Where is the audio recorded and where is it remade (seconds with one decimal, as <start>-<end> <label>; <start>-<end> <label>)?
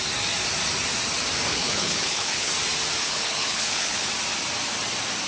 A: 0.0-1.5 recorded; 1.5-2.5 remade; 2.5-3.0 recorded; 3.0-4.1 remade; 4.1-5.3 recorded